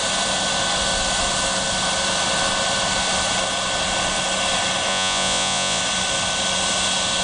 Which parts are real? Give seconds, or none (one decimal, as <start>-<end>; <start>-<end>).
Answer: 0.0-4.9; 5.8-7.2